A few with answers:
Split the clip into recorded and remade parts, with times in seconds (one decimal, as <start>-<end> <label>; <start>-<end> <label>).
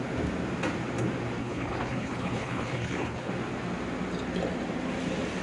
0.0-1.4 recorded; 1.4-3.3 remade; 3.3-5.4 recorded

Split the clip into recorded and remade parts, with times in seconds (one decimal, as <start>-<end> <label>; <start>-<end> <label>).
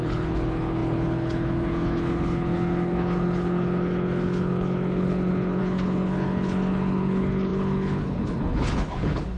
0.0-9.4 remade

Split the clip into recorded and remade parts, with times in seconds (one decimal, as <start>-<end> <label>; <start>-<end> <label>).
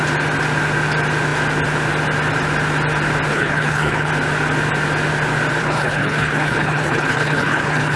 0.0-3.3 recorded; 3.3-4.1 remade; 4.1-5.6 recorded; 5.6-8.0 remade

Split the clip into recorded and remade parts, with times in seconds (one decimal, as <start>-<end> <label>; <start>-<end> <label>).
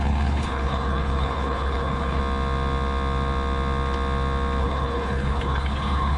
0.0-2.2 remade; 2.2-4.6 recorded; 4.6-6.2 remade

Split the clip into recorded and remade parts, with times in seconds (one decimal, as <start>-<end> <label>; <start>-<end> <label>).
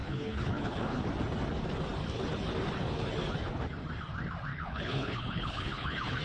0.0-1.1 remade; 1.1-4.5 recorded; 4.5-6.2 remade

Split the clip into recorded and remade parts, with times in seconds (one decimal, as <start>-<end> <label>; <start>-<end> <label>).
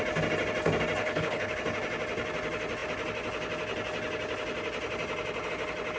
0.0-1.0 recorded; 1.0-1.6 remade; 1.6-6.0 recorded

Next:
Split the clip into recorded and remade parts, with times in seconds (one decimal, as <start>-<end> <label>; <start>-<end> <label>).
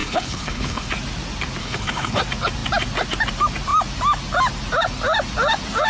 0.0-0.9 remade; 0.9-1.6 recorded; 1.6-2.2 remade; 2.2-5.9 recorded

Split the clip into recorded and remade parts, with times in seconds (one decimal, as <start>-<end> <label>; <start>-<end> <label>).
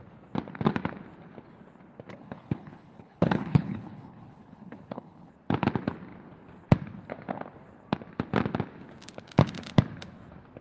0.0-2.1 recorded; 2.1-5.3 remade; 5.3-10.6 recorded